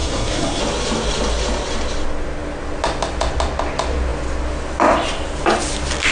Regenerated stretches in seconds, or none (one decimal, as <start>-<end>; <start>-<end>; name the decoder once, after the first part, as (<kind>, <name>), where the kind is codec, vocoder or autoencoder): 0.0-0.6 (codec, SNAC)